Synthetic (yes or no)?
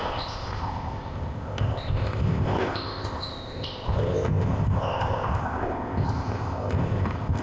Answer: yes